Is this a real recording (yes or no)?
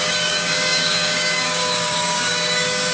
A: no